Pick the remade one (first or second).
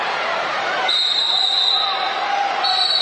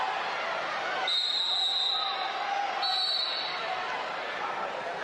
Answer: first